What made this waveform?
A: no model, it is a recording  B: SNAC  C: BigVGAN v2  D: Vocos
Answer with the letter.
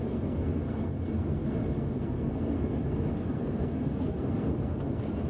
B